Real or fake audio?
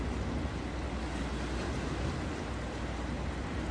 real